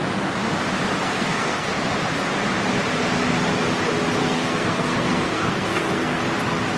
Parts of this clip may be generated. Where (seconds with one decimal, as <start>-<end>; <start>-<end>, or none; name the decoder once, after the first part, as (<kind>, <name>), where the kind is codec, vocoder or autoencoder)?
1.0-1.7 (codec, SNAC); 4.2-6.2